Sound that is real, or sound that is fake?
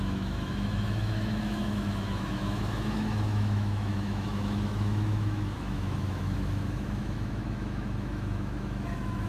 fake